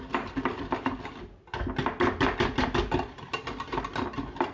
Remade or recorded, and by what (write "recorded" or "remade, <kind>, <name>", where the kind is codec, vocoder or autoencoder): recorded